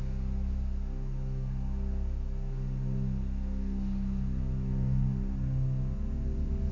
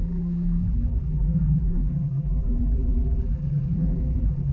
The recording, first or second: first